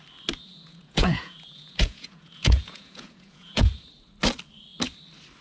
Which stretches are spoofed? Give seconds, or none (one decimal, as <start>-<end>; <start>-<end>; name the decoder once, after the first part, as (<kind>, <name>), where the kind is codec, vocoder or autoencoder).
0.5-3.7 (vocoder, Vocos)